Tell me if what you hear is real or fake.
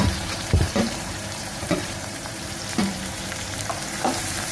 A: fake